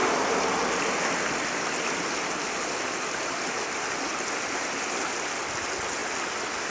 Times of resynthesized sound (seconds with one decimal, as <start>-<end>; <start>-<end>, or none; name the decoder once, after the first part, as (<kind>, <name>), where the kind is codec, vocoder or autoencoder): none

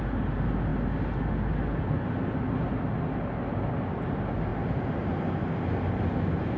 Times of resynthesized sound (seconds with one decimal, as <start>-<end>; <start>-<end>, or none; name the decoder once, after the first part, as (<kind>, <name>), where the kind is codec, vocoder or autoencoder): none

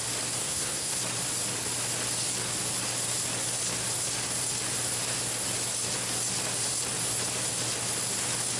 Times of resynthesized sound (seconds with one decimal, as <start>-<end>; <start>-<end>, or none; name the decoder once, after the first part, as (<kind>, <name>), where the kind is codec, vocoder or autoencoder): 0.4-1.0 (codec, SNAC)

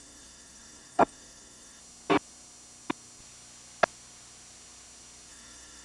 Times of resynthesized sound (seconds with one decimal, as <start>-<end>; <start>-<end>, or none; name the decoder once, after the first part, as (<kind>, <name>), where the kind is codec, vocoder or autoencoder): 0.0-1.8 (codec, SNAC); 5.3-5.8

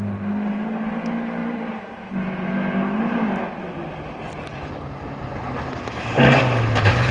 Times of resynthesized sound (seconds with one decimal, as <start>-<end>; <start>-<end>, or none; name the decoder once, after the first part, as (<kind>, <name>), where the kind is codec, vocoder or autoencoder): 1.4-2.1 (vocoder, BigVGAN v2)

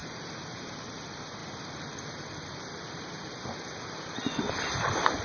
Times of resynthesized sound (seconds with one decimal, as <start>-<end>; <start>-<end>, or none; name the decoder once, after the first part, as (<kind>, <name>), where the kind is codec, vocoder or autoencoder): 0.0-0.7 (vocoder, BigVGAN v2)